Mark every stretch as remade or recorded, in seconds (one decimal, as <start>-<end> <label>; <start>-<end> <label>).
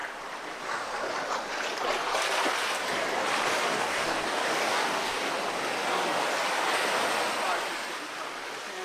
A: 0.0-3.6 recorded; 3.6-5.3 remade; 5.3-8.8 recorded